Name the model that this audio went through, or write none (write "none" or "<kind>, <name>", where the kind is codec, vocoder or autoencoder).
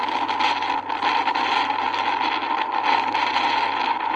none